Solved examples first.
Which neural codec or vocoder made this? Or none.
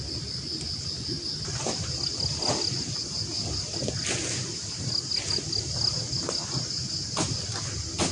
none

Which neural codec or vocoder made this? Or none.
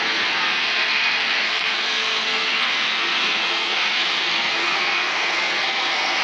codec, SNAC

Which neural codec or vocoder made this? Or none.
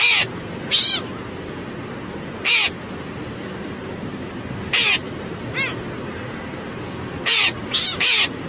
none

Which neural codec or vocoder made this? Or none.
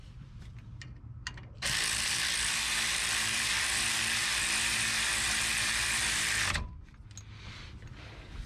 vocoder, BigVGAN v2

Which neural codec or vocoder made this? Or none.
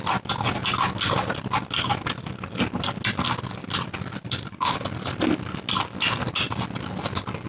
none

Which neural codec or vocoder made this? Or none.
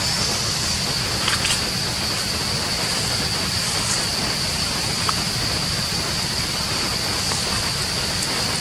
none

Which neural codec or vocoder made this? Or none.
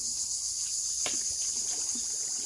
none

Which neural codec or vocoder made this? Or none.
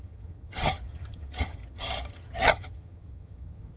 vocoder, HiFi-GAN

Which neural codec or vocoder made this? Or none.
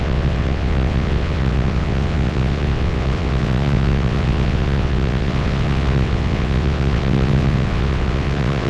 vocoder, WaveNeXt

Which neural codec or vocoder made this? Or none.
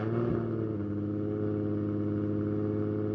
none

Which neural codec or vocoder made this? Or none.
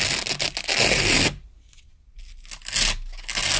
none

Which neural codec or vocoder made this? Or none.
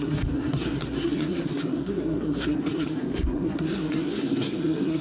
codec, SNAC